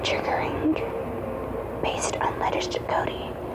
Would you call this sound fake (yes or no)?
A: no